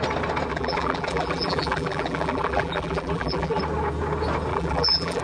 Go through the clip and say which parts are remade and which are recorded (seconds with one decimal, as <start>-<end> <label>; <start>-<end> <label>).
0.0-0.5 recorded; 0.5-3.6 remade; 3.6-4.5 recorded; 4.5-5.2 remade